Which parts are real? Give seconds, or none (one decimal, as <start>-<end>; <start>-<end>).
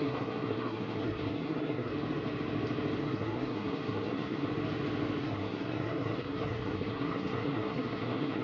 1.9-3.0; 4.5-5.2